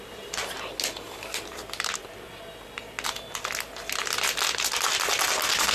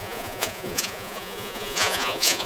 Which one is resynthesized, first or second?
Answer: second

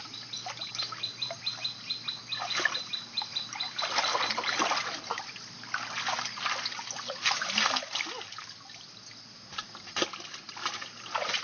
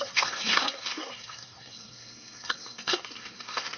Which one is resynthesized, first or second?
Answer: second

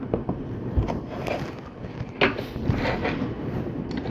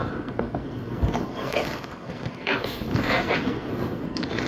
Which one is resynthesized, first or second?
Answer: second